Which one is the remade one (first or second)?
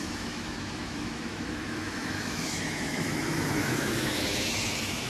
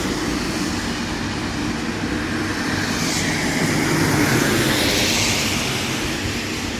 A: first